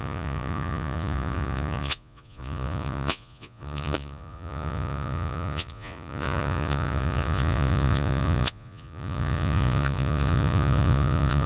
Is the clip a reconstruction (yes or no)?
yes